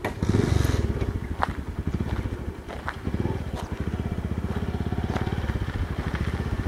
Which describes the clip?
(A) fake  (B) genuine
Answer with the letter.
B